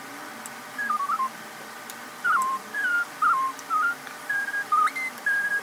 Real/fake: real